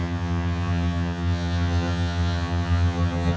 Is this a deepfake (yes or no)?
yes